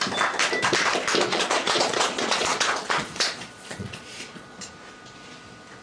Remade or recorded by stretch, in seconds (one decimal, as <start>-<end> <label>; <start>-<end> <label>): 0.0-1.3 recorded; 1.3-4.7 remade; 4.7-5.8 recorded